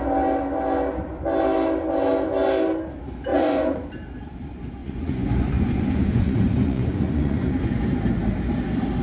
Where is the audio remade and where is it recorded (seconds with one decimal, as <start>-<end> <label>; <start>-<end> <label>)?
0.0-3.3 recorded; 3.3-3.9 remade; 3.9-4.8 recorded; 4.8-7.8 remade; 7.8-9.0 recorded